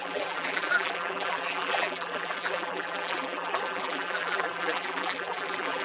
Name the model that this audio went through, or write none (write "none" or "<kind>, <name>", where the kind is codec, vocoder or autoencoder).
vocoder, BigVGAN v2